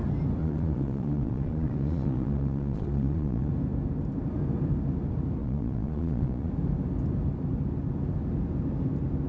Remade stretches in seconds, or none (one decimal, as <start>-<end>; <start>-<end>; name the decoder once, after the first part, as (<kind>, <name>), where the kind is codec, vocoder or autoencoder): 0.4-3.5 (vocoder, Vocos); 5.4-6.5

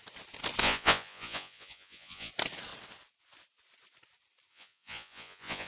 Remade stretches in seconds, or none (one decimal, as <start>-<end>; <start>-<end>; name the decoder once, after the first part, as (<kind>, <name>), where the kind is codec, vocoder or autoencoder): 0.6-2.3 (vocoder, Vocos); 4.5-5.7